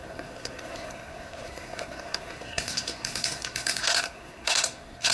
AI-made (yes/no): yes